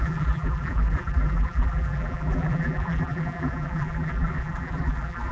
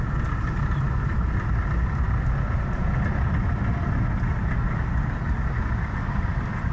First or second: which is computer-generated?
first